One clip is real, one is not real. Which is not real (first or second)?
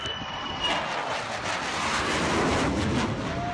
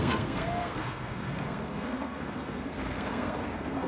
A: second